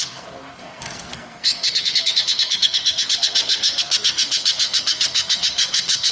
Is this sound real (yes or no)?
no